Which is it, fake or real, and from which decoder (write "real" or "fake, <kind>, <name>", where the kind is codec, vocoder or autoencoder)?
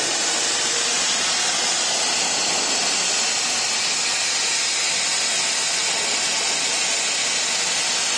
real